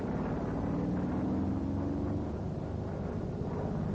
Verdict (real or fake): real